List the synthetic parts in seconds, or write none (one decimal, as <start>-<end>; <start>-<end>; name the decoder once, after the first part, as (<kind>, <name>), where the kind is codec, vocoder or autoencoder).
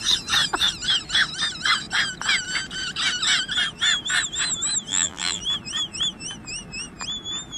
4.9-5.4 (vocoder, BigVGAN v2)